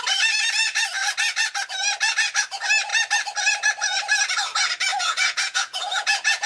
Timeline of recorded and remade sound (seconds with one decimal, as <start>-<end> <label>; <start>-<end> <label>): 0.0-4.9 recorded; 4.9-6.5 remade